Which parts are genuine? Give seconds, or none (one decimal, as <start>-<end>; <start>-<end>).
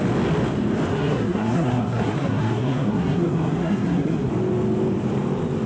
0.0-0.9; 4.3-5.7